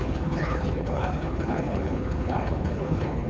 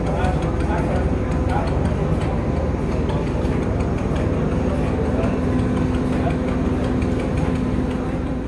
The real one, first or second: second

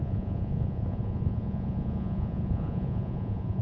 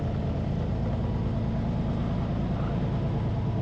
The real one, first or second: second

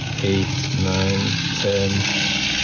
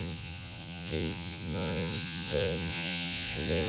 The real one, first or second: first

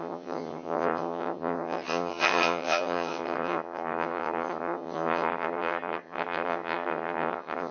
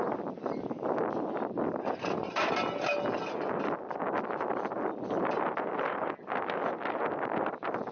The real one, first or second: second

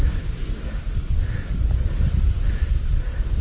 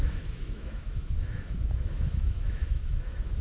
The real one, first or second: first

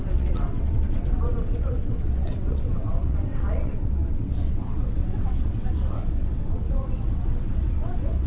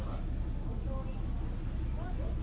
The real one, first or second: second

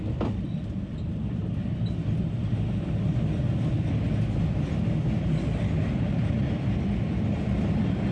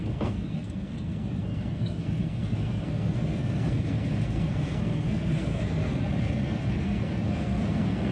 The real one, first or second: first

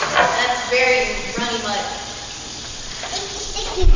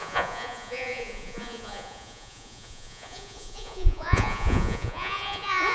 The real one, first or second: first